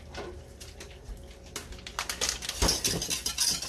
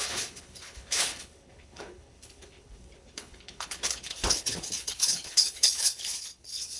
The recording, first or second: first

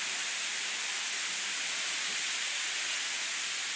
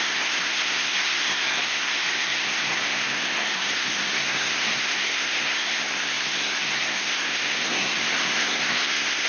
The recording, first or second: first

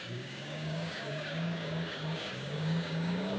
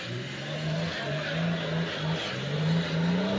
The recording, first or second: second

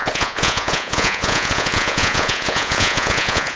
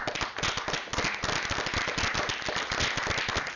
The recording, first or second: second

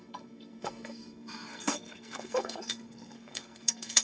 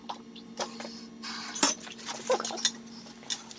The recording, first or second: second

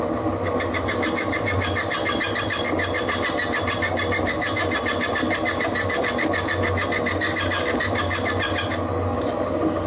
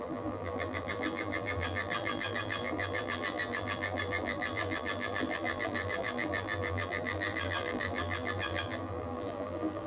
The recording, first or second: first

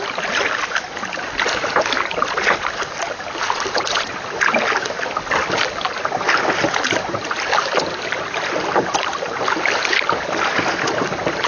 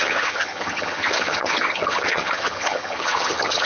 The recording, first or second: first